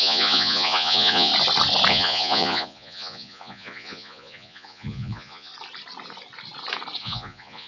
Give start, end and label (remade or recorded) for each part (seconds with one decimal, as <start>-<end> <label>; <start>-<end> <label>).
0.0-1.3 remade; 1.3-1.9 recorded; 1.9-5.5 remade; 5.5-7.0 recorded; 7.0-7.7 remade